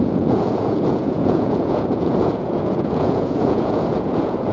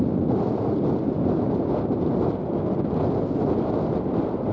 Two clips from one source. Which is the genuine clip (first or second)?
second